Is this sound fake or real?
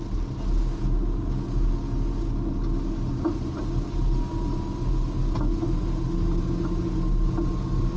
real